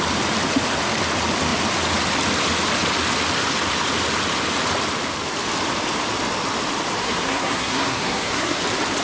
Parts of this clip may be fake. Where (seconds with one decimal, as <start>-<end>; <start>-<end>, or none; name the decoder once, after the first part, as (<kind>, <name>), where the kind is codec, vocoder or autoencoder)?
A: 7.0-8.6 (codec, SNAC)